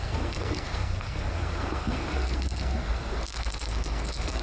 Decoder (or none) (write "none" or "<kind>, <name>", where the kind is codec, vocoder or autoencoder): codec, SNAC